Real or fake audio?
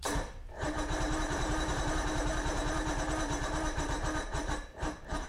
fake